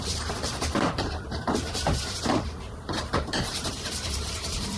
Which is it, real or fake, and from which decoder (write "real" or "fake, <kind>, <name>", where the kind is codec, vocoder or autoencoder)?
fake, vocoder, BigVGAN v2